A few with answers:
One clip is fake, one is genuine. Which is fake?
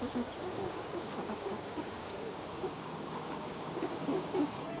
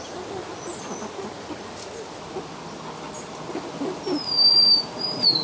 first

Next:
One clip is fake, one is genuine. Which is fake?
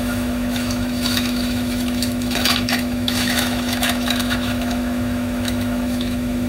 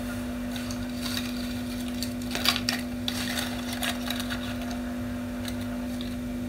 first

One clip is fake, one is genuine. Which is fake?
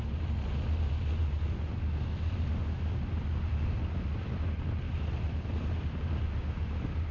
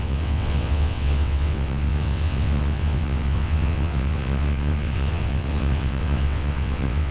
second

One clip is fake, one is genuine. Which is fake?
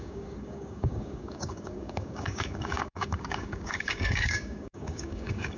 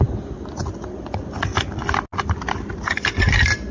first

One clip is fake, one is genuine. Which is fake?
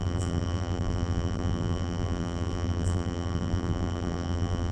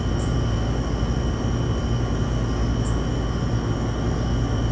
first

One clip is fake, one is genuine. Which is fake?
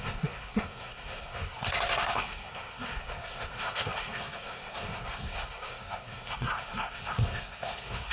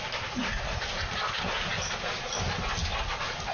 first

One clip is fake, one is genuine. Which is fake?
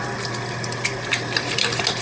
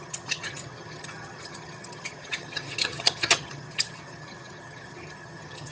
second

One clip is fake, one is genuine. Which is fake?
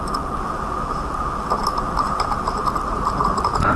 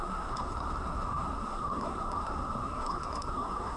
second